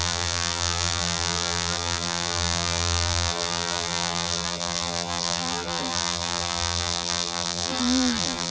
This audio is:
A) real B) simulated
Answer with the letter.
B